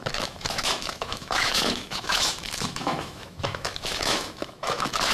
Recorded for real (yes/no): no